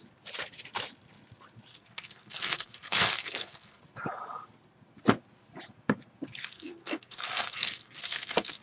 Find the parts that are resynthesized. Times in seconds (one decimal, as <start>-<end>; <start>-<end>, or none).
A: 1.7-3.8; 6.4-8.6